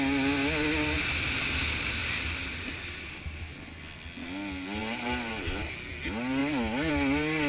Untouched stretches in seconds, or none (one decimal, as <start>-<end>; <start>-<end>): 0.0-2.0; 2.9-4.8; 5.3-7.5